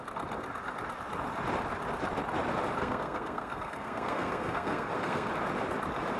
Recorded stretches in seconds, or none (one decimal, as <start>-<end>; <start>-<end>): 0.0-2.8; 5.3-6.2